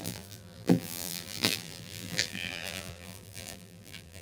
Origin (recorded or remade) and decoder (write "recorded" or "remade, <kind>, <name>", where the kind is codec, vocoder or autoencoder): remade, vocoder, BigVGAN v2